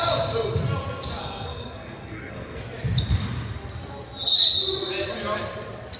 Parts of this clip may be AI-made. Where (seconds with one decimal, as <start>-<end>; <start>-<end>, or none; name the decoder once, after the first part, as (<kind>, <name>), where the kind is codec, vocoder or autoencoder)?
1.2-2.6 (codec, SNAC)